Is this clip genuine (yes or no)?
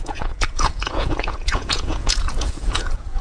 no